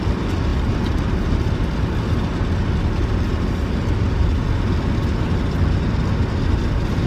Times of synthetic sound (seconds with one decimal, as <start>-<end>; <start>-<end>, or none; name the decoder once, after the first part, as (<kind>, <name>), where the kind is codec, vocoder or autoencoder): none